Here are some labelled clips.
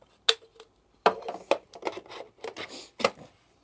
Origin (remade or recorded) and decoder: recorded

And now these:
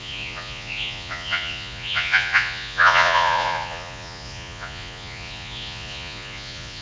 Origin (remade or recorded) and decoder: remade, vocoder, Vocos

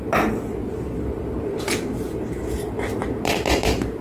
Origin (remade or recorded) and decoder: recorded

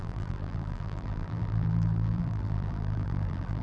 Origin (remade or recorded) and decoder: remade, vocoder, BigVGAN v2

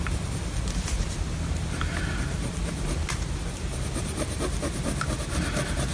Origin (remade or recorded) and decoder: recorded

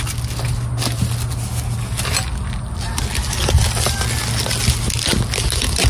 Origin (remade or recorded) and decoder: recorded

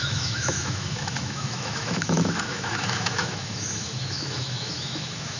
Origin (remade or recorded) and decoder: remade, autoencoder, DAC-VAE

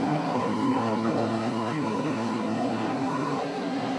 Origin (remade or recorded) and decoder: remade, codec, SNAC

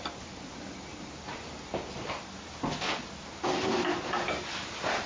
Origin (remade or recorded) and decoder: recorded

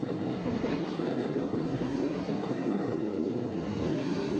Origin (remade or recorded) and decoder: remade, codec, SNAC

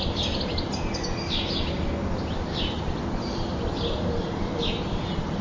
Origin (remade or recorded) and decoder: recorded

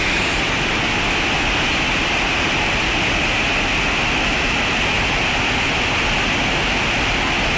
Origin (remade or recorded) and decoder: recorded